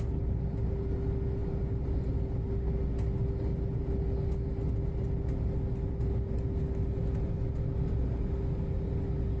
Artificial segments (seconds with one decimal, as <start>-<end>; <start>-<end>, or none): none